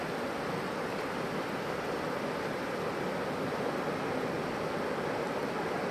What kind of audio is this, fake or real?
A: real